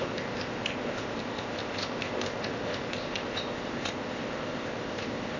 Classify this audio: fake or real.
fake